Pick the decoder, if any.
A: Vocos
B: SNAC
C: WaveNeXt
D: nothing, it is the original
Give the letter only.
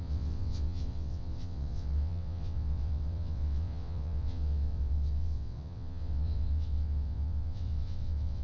C